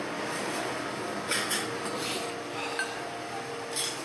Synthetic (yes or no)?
no